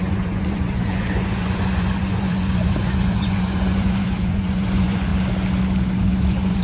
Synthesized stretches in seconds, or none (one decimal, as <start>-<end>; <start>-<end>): 0.0-5.1; 6.0-6.6